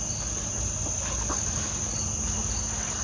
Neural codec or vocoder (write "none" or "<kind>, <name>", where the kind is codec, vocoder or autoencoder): none